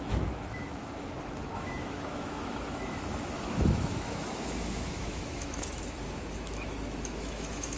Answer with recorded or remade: remade